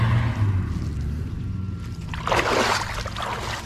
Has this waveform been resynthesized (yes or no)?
no